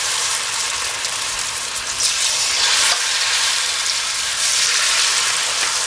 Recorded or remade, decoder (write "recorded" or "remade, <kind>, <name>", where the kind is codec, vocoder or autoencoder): remade, vocoder, BigVGAN v2